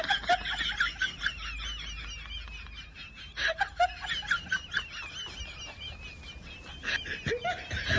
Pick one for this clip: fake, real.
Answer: real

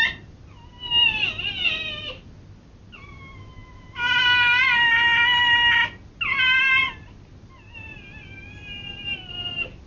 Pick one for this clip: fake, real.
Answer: real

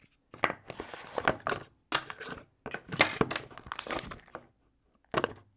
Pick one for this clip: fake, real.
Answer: real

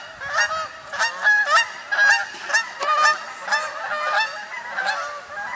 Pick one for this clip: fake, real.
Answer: real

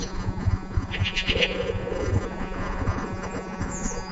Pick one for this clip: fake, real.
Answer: fake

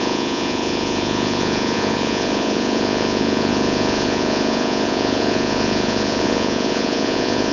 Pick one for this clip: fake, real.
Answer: fake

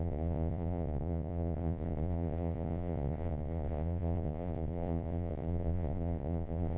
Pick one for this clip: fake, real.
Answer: fake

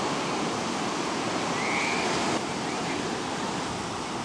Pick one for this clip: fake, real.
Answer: real